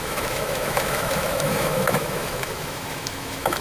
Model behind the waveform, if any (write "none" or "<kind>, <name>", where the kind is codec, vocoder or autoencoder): autoencoder, DAC-VAE